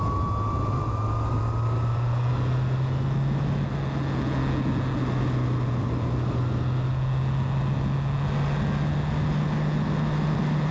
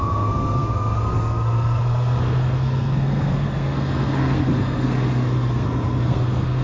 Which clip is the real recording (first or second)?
first